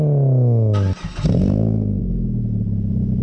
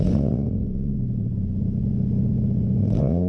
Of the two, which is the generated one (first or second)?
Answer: second